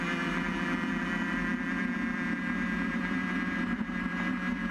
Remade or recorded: remade